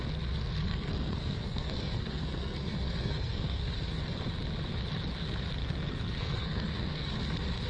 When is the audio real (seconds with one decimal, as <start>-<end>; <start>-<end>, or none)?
0.0-0.6; 3.6-5.6; 7.1-7.7